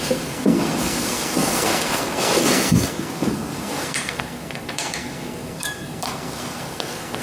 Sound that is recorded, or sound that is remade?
remade